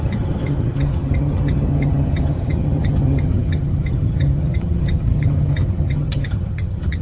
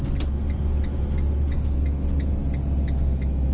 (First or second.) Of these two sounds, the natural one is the second